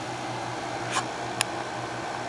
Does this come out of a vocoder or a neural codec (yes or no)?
no